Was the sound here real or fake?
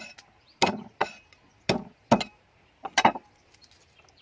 real